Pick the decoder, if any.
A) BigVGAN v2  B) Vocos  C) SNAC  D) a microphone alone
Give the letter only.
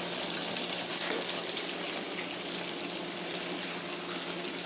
D